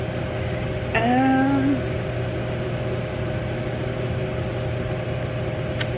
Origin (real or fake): real